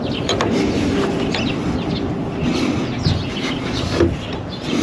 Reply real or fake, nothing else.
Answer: real